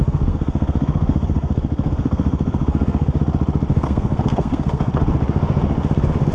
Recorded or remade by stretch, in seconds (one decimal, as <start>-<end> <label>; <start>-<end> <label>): 0.0-3.2 remade; 3.2-3.7 recorded; 3.7-4.9 remade; 4.9-6.3 recorded